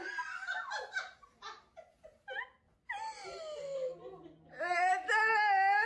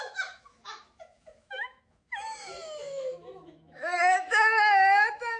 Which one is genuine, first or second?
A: first